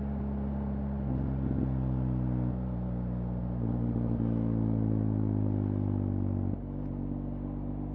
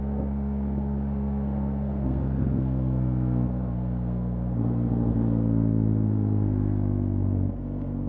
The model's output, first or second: second